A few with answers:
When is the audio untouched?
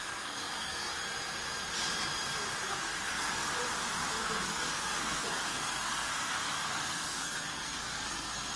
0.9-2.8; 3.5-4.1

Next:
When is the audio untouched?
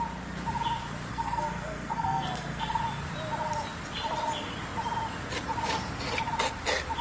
0.0-1.1; 2.8-7.0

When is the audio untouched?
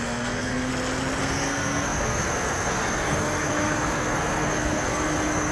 0.7-1.2